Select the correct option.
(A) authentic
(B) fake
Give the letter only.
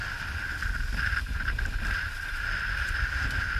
A